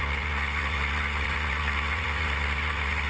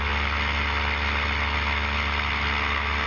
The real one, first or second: second